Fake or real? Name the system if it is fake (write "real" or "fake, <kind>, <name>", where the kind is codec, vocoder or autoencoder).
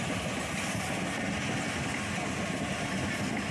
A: real